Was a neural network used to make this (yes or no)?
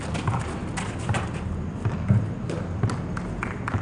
no